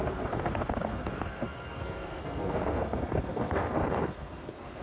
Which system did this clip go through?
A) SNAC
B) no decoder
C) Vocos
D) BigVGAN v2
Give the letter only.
A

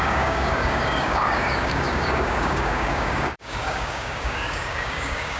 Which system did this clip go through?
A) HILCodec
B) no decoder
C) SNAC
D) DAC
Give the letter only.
D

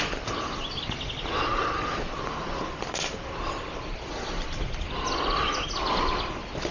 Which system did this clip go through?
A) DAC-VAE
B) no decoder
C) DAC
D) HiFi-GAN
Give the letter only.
B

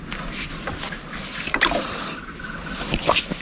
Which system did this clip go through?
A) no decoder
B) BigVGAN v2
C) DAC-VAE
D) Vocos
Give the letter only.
A